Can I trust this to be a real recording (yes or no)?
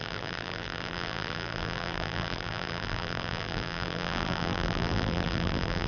no